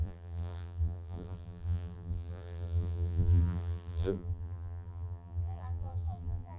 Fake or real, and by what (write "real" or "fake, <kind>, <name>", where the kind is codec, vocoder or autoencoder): fake, vocoder, BigVGAN v2